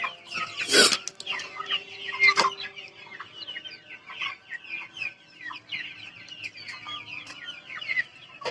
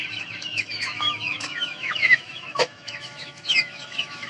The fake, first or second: second